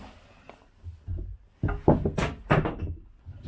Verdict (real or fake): real